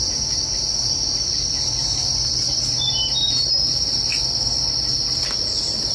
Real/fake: real